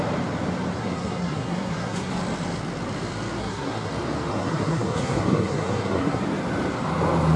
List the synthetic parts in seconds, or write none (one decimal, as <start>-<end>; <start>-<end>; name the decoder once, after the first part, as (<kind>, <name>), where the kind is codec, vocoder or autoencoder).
0.8-2.1 (codec, SNAC); 3.4-3.9; 4.3-6.2